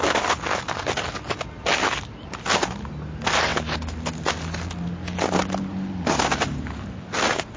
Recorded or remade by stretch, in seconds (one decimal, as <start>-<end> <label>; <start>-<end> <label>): 0.0-7.6 recorded